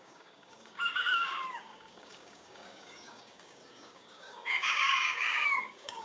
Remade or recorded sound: remade